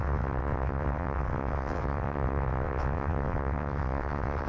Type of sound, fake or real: fake